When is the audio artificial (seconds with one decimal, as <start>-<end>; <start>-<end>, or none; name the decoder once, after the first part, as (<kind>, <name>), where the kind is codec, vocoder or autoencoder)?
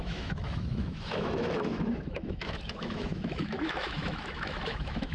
0.0-5.1 (autoencoder, DAC-VAE)